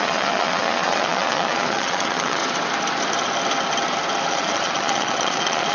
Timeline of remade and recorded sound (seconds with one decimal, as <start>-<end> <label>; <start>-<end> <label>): 0.0-2.4 remade; 2.4-4.3 recorded; 4.3-5.7 remade